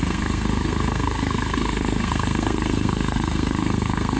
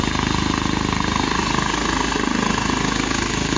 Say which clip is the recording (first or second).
second